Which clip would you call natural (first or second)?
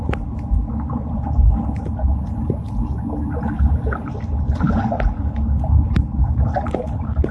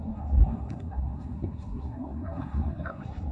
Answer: first